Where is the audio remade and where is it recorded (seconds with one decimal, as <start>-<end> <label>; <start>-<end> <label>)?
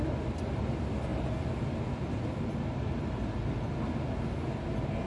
0.0-5.1 recorded